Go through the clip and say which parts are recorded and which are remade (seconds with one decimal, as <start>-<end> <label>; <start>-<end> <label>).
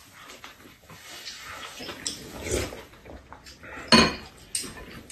0.0-0.7 recorded; 0.7-1.8 remade; 1.8-5.1 recorded